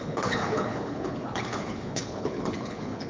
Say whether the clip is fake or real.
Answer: fake